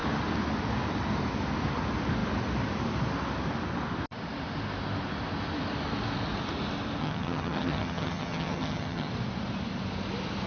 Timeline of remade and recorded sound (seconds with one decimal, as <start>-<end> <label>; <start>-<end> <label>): 0.0-7.0 recorded; 7.0-9.1 remade; 9.1-10.5 recorded